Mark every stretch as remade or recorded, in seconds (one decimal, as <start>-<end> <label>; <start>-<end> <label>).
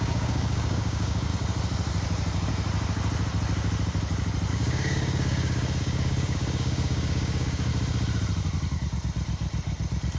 0.0-1.3 remade; 1.3-4.5 recorded; 4.5-7.7 remade; 7.7-10.2 recorded